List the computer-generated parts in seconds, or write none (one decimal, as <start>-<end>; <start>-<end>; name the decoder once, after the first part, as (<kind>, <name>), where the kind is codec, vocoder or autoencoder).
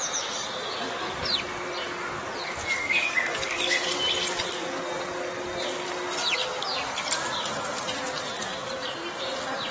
2.6-4.0 (codec, DAC)